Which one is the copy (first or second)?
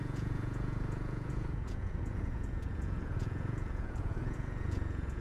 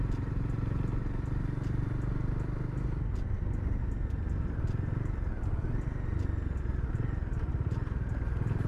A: first